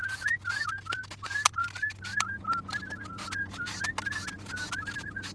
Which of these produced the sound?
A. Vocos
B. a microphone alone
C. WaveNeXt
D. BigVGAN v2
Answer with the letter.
B